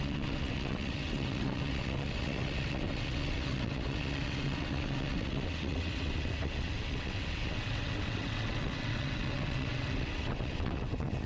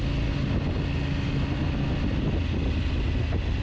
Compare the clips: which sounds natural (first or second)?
second